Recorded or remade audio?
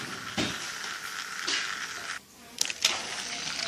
recorded